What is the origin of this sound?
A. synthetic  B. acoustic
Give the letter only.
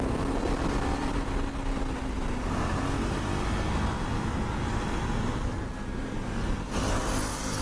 B